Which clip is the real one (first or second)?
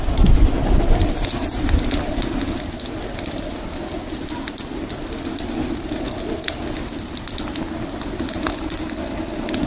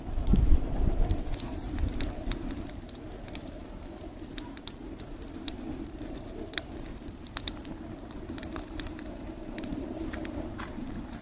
first